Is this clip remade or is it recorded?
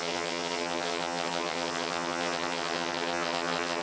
remade